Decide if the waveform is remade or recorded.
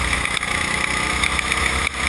remade